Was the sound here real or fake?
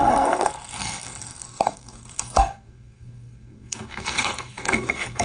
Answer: fake